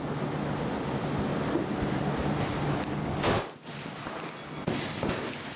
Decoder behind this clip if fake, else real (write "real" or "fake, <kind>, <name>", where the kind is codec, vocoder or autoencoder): real